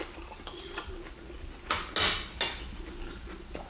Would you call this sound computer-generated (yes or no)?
no